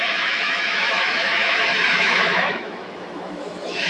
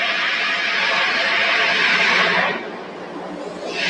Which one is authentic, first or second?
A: second